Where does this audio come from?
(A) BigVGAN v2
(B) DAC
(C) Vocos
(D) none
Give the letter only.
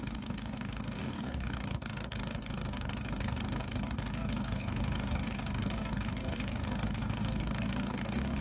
B